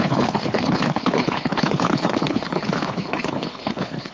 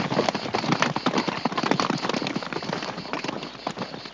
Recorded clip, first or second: second